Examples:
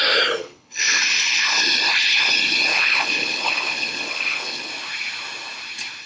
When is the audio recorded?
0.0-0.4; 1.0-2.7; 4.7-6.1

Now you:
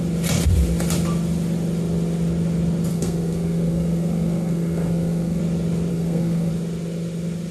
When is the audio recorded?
0.0-2.9; 5.4-5.9; 6.5-7.5